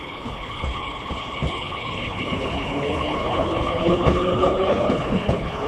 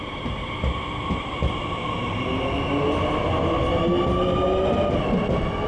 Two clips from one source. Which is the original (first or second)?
second